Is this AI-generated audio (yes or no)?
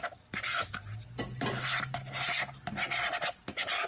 no